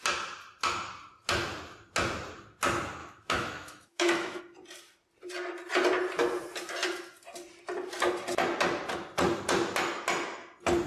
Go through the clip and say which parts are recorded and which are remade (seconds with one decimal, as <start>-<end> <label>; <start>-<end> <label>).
0.0-3.0 recorded; 3.0-4.4 remade; 4.4-10.9 recorded